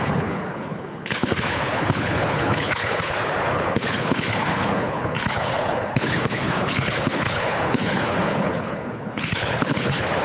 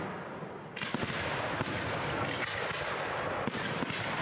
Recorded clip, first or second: second